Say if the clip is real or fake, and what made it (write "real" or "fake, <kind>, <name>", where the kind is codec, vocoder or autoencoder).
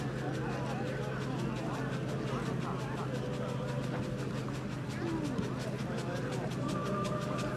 real